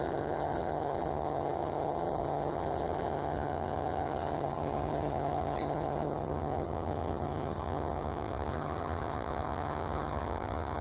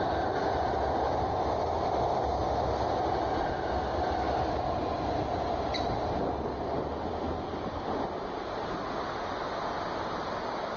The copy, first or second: first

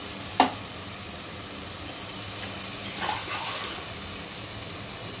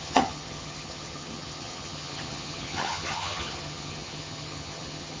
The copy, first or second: second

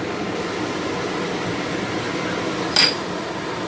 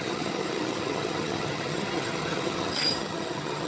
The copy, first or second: second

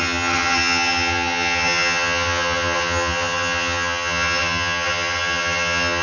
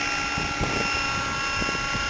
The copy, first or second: first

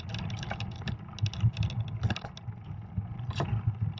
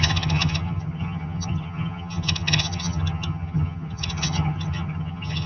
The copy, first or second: second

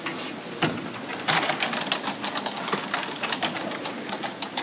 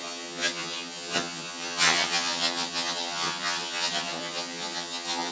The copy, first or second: second